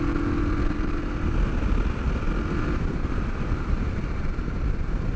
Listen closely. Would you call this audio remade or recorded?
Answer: remade